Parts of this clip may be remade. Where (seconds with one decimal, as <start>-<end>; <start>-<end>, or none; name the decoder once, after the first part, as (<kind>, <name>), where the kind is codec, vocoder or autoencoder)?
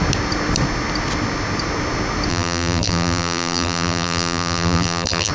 2.3-5.3 (vocoder, BigVGAN v2)